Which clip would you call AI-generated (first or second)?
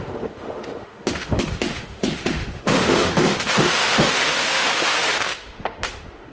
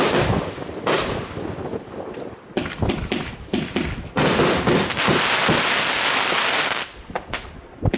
first